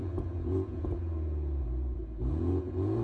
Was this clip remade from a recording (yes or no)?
yes